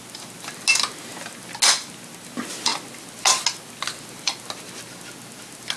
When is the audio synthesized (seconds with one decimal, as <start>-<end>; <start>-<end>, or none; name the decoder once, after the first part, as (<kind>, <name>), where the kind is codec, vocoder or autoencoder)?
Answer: none